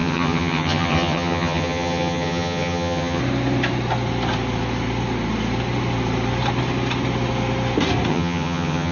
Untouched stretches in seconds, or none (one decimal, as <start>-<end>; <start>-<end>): 3.2-8.1